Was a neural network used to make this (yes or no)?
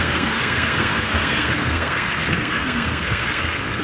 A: yes